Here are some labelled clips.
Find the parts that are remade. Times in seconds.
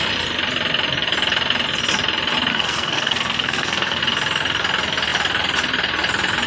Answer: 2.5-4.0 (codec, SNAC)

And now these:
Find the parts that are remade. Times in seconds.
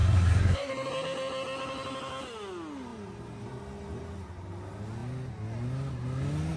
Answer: 0.0-0.7 (codec, SNAC)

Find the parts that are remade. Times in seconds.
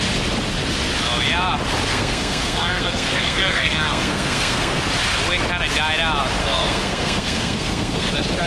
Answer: 1.9-4.8 (codec, SNAC); 6.4-8.1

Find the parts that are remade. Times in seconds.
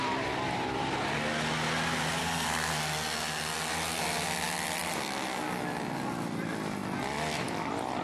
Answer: 2.2-2.7 (codec, SNAC)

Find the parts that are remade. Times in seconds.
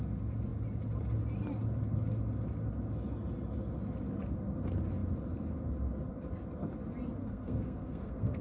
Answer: 7.2-8.4 (codec, SNAC)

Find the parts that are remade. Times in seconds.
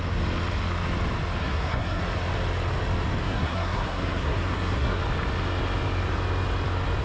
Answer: 1.4-2.0 (codec, SNAC); 3.2-5.0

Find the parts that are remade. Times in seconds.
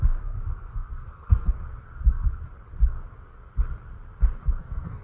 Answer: 0.0-1.6 (codec, SNAC); 4.6-5.0